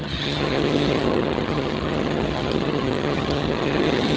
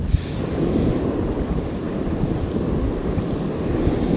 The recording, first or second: second